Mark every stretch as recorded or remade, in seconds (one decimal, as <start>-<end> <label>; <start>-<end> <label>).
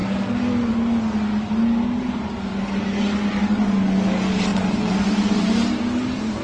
0.0-6.4 recorded